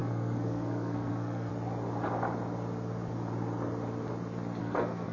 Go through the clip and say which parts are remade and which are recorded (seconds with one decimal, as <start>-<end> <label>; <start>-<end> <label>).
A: 0.0-1.5 remade; 1.5-4.6 recorded; 4.6-5.1 remade